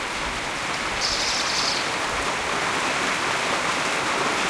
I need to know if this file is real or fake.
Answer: real